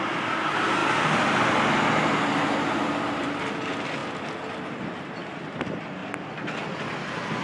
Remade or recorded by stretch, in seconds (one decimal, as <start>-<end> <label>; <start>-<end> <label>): 0.0-7.4 recorded